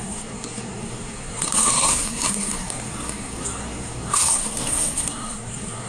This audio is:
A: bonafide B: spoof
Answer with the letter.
B